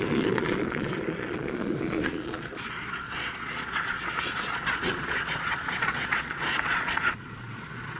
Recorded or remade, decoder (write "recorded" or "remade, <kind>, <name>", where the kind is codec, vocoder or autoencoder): remade, vocoder, Vocos